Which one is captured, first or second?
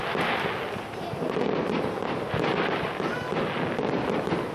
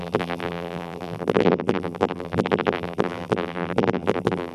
first